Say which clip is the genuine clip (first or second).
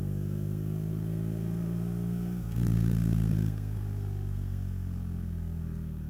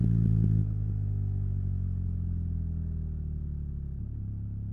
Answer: second